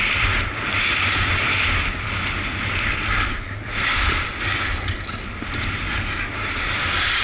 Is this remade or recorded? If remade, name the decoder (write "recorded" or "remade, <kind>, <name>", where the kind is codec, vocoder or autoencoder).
recorded